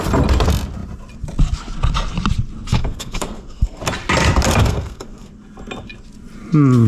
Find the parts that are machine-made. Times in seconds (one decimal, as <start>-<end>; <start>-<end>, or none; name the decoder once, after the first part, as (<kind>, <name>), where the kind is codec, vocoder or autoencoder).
2.7-3.8 (codec, SNAC); 4.6-5.3